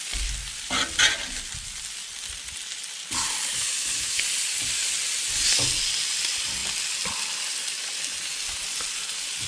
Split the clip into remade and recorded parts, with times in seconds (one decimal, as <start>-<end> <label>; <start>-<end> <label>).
0.0-3.5 recorded; 3.5-4.2 remade; 4.2-9.5 recorded